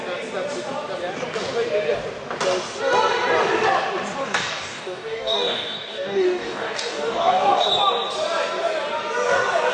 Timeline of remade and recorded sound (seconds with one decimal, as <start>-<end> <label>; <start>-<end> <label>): 0.0-4.2 recorded; 4.2-7.7 remade; 7.7-9.7 recorded

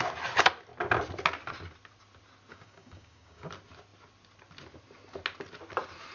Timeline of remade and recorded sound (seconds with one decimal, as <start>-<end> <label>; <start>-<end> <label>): 0.0-2.5 recorded; 2.5-3.5 remade; 3.5-6.1 recorded

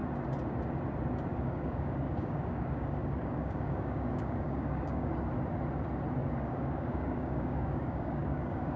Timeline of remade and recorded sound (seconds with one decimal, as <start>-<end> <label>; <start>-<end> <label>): 0.0-1.3 recorded; 1.3-5.1 remade; 5.1-6.2 recorded; 6.2-8.8 remade